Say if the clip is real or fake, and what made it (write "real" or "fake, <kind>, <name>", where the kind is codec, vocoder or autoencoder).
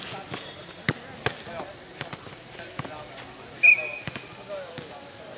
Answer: real